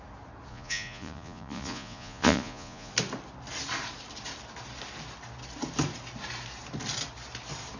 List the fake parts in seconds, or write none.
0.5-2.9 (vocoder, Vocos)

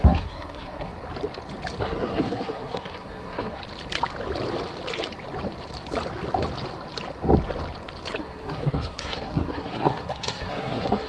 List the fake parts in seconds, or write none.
0.0-0.9 (codec, SNAC); 1.8-3.6; 8.2-11.1

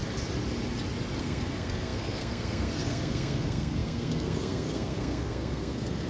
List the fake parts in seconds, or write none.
1.2-6.1 (codec, SNAC)

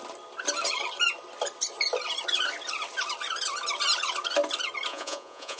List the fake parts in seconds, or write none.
4.9-5.6 (vocoder, Vocos)

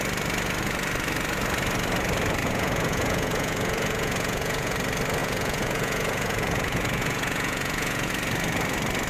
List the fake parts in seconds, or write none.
2.4-4.7 (vocoder, Vocos); 5.2-8.1

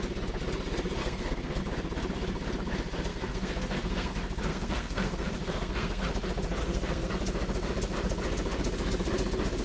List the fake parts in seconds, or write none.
1.0-1.6 (codec, SNAC); 3.1-4.1; 4.5-6.1; 6.6-7.1

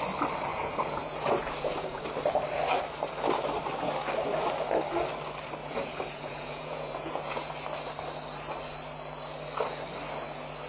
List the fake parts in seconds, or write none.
0.5-2.0 (vocoder, Vocos); 5.6-7.5

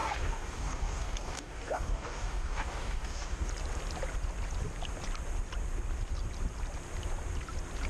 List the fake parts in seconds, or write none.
0.0-3.5 (codec, DAC)